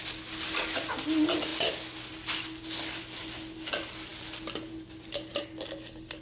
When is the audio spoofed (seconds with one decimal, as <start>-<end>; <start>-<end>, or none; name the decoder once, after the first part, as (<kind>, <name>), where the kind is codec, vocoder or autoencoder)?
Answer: none